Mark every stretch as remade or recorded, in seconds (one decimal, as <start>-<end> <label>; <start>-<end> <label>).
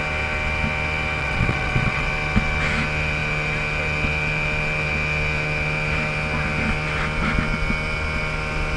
0.0-1.2 recorded; 1.2-2.1 remade; 2.1-8.8 recorded